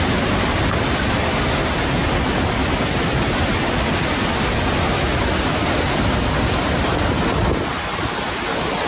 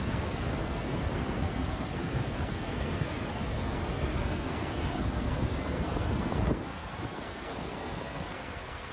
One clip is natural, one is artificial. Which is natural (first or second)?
first